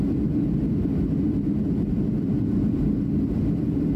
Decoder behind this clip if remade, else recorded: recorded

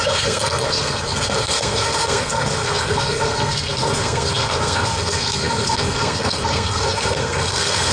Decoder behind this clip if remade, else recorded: remade, codec, SNAC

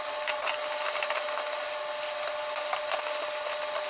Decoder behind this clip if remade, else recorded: recorded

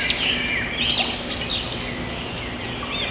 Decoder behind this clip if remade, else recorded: recorded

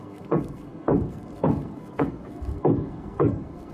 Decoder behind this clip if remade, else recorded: remade, codec, SNAC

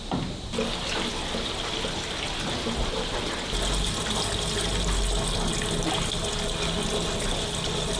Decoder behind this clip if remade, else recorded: recorded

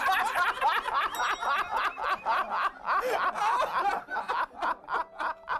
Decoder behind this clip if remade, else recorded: recorded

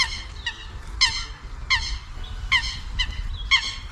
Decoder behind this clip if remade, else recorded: recorded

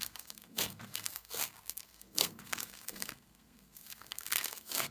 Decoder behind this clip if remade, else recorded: remade, codec, SNAC